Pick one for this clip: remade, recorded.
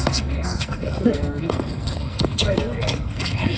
remade